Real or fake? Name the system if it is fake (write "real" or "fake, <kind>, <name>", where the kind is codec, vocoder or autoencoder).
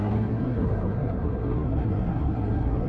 fake, codec, SNAC